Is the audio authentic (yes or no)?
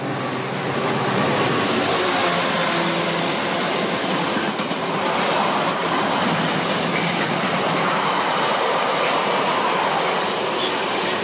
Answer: yes